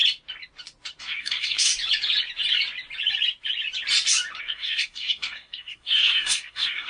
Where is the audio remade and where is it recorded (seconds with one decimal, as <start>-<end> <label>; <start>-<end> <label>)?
0.0-1.0 recorded; 1.0-1.7 remade; 1.7-4.4 recorded; 4.4-6.9 remade